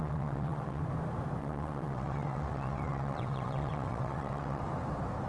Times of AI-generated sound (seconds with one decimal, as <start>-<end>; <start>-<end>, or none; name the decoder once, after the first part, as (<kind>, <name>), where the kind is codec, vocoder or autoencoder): 0.0-0.8 (vocoder, WaveNeXt); 1.4-4.6